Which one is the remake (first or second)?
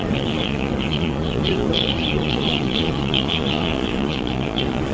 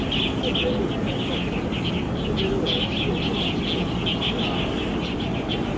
first